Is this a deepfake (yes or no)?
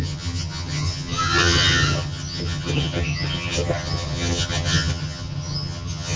yes